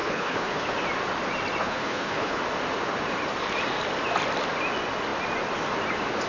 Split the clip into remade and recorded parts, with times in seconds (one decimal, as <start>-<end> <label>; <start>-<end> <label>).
0.0-0.7 remade; 0.7-1.6 recorded; 1.6-2.4 remade; 2.4-6.3 recorded